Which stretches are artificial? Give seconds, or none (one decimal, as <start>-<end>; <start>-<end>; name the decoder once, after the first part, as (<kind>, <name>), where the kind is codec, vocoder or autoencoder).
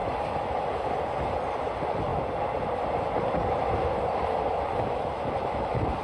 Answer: 1.2-2.1 (vocoder, BigVGAN v2); 5.3-6.0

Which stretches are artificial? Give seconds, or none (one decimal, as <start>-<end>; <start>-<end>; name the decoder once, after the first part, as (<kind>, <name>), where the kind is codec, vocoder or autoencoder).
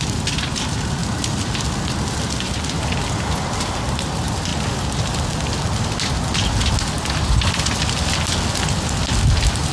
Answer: none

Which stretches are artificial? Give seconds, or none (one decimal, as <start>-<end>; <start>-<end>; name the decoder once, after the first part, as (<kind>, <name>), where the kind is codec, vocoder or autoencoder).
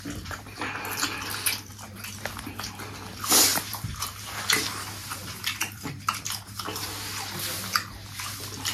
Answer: 3.5-6.6 (vocoder, BigVGAN v2)